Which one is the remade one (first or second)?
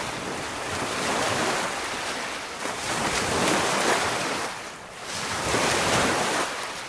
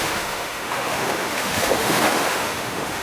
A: second